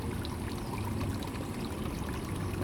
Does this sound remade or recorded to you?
remade